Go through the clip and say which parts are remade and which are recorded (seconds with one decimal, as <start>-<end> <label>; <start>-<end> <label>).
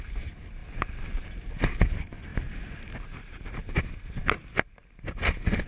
0.0-5.7 recorded